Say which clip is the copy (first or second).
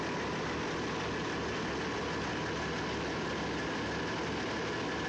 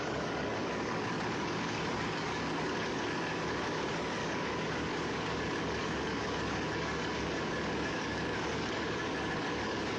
second